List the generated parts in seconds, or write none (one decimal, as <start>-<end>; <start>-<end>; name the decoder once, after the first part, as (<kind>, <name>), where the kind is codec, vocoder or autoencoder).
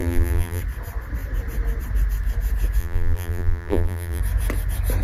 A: 0.0-0.6 (vocoder, BigVGAN v2); 2.8-4.2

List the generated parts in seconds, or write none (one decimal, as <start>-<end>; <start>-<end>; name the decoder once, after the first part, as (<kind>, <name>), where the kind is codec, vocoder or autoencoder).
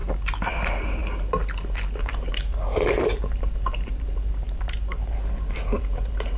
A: 0.5-1.0 (vocoder, BigVGAN v2); 2.0-6.4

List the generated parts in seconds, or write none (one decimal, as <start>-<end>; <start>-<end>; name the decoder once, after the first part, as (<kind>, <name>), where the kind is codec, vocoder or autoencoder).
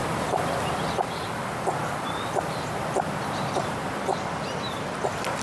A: none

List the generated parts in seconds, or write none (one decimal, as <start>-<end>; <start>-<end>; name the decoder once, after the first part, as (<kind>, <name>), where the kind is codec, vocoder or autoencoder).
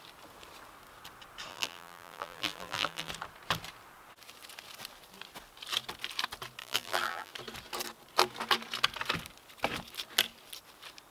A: 1.5-3.1 (vocoder, BigVGAN v2); 6.6-7.3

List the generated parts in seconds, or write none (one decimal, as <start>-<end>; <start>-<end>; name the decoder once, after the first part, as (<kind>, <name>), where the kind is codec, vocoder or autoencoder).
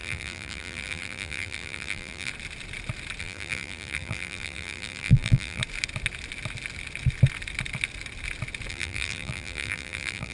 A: 0.0-2.3 (vocoder, BigVGAN v2); 3.2-5.6; 8.7-10.3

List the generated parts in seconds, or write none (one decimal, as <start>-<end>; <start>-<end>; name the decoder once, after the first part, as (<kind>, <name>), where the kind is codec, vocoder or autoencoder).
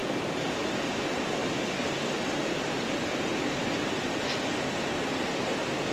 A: 0.0-0.6 (vocoder, BigVGAN v2); 1.4-2.0; 2.4-3.8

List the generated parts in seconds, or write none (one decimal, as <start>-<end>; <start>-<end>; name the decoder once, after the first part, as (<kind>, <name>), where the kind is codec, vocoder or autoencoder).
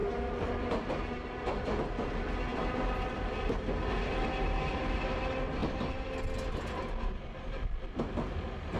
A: 0.0-0.9 (vocoder, BigVGAN v2); 2.5-3.4